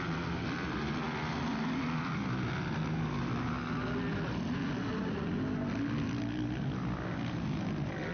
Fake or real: real